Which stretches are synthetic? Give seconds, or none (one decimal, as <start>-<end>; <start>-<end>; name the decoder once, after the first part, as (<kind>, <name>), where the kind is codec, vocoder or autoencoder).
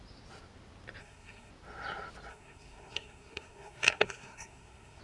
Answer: 1.0-1.5 (codec, SNAC); 2.3-5.0